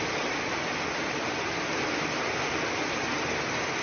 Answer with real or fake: real